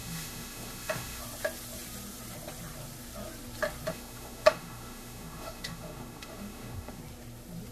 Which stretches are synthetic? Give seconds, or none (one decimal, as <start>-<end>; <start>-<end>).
0.0-1.2; 3.9-7.0